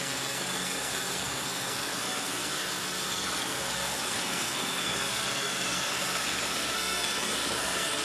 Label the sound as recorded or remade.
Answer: remade